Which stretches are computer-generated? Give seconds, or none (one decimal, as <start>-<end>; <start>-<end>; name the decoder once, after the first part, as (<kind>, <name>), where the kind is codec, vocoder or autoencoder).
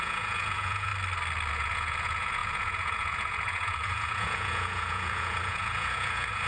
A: 0.0-0.9 (vocoder, Vocos); 1.5-6.5